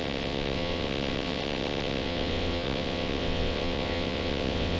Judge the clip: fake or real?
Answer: fake